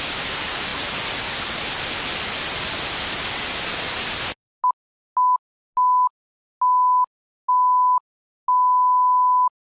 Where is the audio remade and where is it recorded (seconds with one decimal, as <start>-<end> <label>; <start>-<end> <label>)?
0.0-9.7 recorded